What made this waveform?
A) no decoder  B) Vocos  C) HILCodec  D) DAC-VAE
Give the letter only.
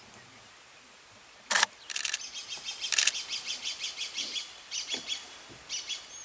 A